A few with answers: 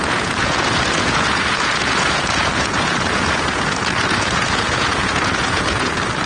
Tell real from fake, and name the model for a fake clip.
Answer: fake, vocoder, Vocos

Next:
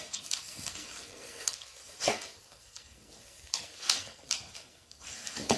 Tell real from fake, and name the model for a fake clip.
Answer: fake, codec, SNAC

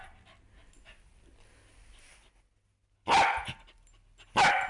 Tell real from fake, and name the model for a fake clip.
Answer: real